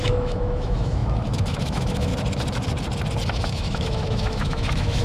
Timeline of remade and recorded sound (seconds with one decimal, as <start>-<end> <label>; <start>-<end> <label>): 0.0-2.1 remade; 2.1-3.3 recorded; 3.3-5.0 remade